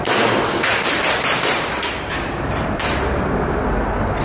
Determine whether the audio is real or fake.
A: fake